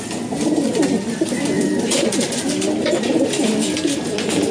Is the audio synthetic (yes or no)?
no